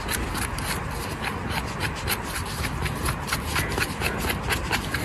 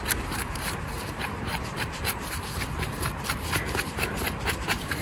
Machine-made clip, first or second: second